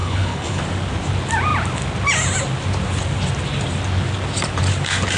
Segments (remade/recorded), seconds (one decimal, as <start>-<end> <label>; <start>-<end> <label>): 0.0-0.6 remade; 0.6-5.2 recorded